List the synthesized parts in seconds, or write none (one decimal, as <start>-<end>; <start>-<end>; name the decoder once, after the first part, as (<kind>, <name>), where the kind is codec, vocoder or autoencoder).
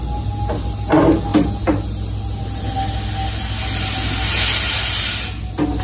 none